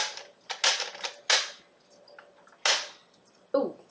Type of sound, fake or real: real